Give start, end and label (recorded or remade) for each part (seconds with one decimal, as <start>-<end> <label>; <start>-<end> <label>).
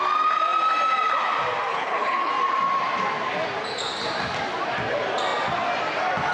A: 0.0-1.7 recorded; 1.7-2.3 remade; 2.3-6.3 recorded